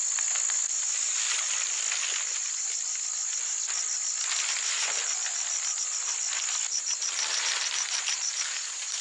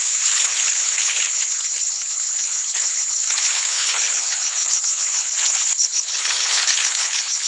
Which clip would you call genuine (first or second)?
first